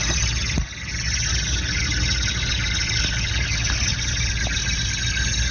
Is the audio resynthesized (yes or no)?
no